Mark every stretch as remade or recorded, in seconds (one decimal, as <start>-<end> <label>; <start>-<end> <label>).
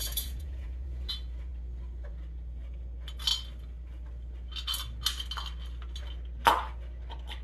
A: 0.0-1.1 remade; 1.1-7.4 recorded